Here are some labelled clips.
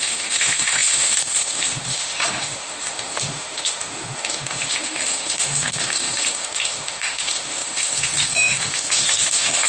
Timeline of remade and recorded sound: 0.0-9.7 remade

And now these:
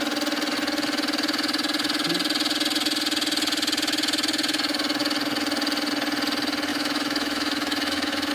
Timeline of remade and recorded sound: 0.0-6.7 recorded; 6.7-8.3 remade

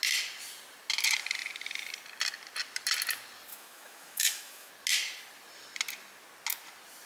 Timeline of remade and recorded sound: 0.0-3.5 recorded; 3.5-4.7 remade; 4.7-7.1 recorded

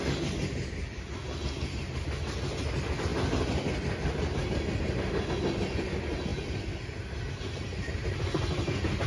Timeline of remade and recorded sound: 0.0-9.1 recorded